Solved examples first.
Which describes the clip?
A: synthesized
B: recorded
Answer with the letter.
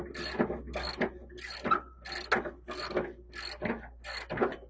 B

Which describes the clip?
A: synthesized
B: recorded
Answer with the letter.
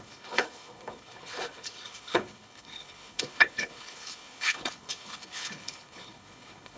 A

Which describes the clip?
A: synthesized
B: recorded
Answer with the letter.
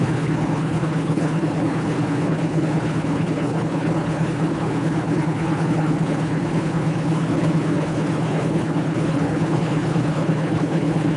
A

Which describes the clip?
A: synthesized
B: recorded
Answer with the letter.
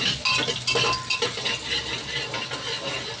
B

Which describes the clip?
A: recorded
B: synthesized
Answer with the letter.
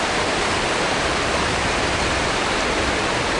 A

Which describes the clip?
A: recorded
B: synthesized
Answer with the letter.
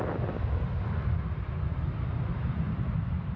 A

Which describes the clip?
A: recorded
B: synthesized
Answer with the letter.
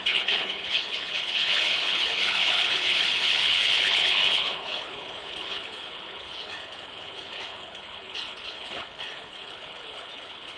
B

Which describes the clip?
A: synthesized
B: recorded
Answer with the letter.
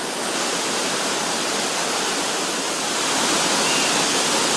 B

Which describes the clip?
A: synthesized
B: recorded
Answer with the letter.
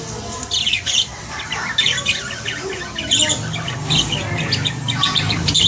B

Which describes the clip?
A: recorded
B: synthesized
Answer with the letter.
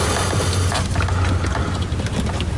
A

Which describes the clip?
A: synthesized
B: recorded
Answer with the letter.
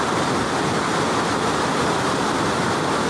B